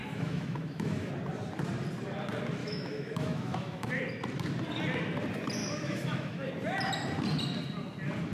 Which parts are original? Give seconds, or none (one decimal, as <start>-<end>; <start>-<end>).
1.1-2.6; 3.9-5.6; 6.5-8.3